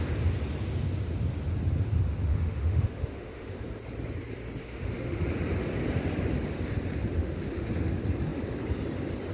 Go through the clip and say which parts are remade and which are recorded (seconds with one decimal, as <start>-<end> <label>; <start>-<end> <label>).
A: 0.0-2.3 recorded; 2.3-3.6 remade; 3.6-4.6 recorded; 4.6-5.3 remade; 5.3-7.2 recorded; 7.2-7.7 remade; 7.7-9.3 recorded